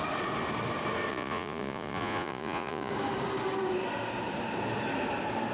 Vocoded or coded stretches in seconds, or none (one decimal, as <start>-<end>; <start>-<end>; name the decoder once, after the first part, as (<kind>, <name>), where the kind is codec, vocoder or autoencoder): 1.1-2.9 (vocoder, Vocos)